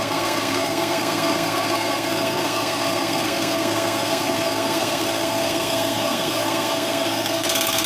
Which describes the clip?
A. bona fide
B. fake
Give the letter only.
B